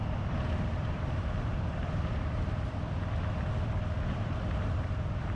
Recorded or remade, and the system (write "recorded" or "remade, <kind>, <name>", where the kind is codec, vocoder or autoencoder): remade, vocoder, BigVGAN v2